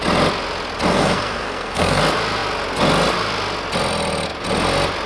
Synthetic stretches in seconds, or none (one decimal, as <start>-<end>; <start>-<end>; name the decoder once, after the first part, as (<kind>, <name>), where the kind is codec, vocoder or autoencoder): 0.9-2.0 (codec, SNAC)